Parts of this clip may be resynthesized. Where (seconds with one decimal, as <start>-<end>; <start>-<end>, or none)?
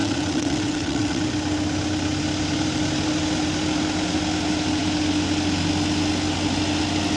0.0-1.2